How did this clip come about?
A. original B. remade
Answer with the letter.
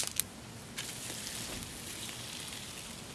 A